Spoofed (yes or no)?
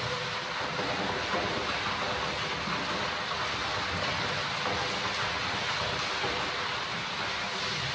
no